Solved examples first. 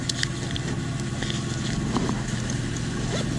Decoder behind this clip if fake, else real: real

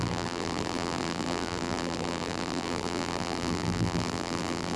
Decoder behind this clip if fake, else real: fake, vocoder, BigVGAN v2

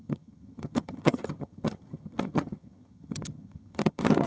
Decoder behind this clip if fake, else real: fake, vocoder, HiFi-GAN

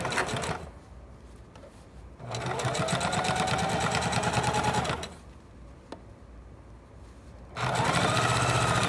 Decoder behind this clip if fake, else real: real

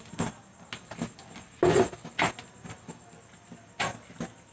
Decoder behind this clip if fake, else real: real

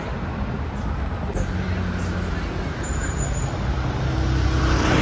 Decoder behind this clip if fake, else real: real